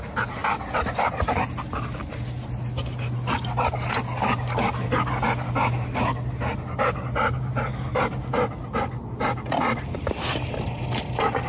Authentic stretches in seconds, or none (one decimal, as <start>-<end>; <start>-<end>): 0.0-11.5